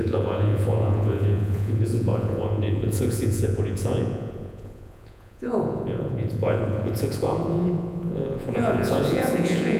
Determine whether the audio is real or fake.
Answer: fake